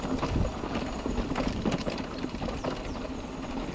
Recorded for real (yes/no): yes